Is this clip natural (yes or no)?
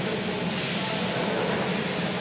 yes